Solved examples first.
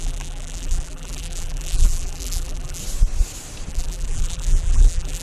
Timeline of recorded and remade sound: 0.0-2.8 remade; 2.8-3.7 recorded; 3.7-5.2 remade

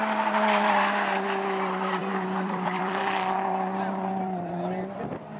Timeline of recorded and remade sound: 0.0-2.0 recorded; 2.0-5.4 remade

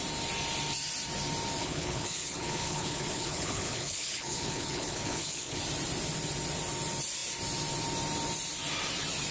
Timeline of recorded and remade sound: 0.0-1.6 recorded; 1.6-5.6 remade; 5.6-9.3 recorded

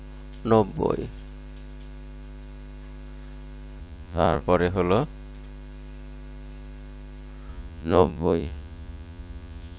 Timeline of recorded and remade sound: 0.0-3.8 recorded; 3.8-4.4 remade; 4.4-7.5 recorded; 7.5-9.8 remade

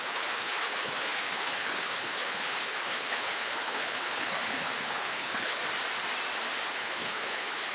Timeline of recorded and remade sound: 0.0-5.6 remade; 5.6-6.7 recorded; 6.7-7.7 remade